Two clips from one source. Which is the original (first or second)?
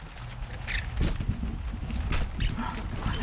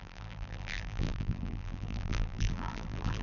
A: first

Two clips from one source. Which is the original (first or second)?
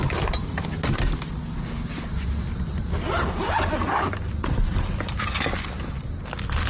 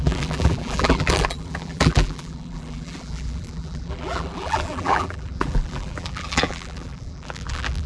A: first